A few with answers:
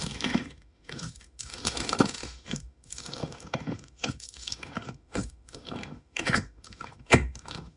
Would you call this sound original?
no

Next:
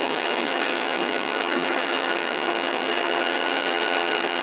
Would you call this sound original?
no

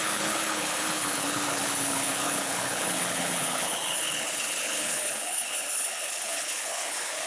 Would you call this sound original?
no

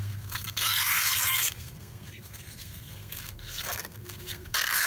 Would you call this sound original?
no